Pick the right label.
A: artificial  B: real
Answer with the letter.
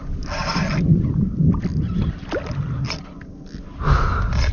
B